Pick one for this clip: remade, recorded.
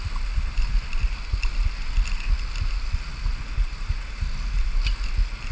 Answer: recorded